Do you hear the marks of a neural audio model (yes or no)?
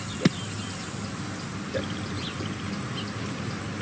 no